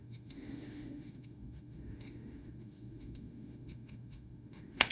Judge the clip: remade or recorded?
remade